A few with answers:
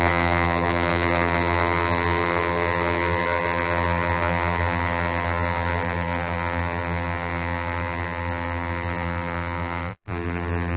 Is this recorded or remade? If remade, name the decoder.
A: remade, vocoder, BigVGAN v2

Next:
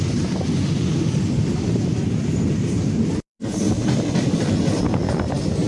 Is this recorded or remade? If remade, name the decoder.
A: remade, vocoder, BigVGAN v2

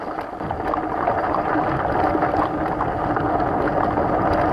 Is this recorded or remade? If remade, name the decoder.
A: recorded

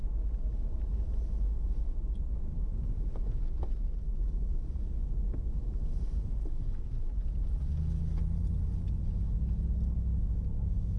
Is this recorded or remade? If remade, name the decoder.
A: recorded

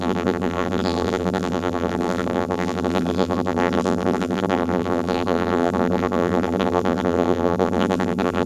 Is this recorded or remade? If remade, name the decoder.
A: remade, vocoder, BigVGAN v2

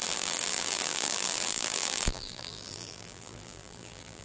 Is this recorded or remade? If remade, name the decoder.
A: remade, vocoder, BigVGAN v2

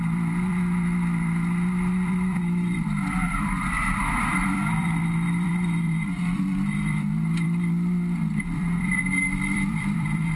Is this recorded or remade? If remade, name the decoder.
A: remade, vocoder, BigVGAN v2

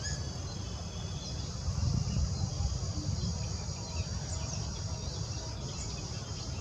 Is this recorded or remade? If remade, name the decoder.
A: recorded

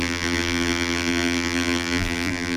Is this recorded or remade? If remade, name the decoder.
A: remade, vocoder, BigVGAN v2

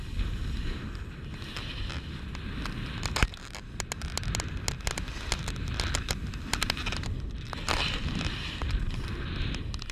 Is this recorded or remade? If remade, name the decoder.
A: recorded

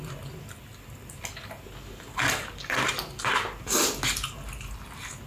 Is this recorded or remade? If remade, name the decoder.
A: recorded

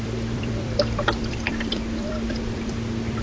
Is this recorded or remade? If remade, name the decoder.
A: remade, vocoder, BigVGAN v2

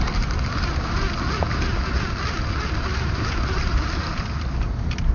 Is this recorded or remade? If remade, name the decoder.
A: recorded